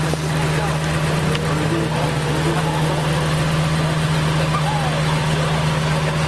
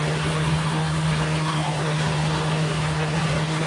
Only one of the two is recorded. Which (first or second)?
first